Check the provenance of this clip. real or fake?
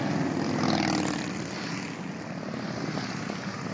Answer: real